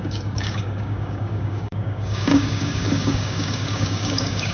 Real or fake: fake